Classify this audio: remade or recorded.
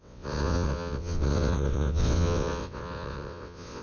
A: remade